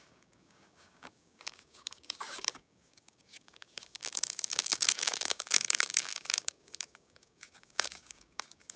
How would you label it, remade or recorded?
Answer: remade